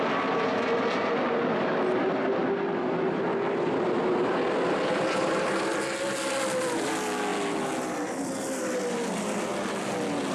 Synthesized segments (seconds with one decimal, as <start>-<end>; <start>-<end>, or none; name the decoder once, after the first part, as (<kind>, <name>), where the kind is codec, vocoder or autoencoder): none